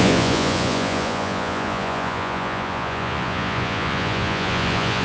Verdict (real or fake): fake